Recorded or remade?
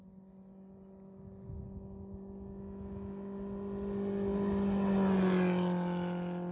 recorded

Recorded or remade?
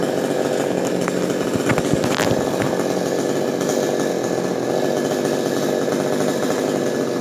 recorded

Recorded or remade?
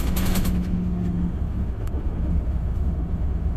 remade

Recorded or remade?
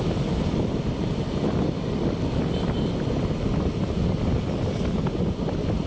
recorded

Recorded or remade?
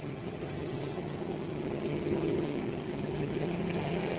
remade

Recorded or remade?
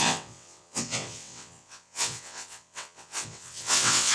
remade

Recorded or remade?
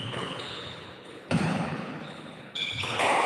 remade